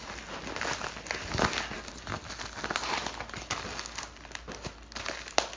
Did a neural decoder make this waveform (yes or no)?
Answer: no